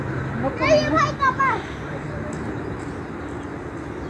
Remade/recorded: recorded